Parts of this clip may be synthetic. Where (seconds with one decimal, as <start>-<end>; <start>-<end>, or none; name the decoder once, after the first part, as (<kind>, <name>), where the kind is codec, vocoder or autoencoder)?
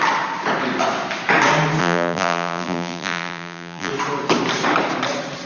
1.8-3.9 (vocoder, BigVGAN v2)